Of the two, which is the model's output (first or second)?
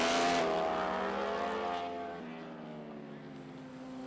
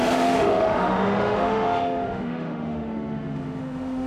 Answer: second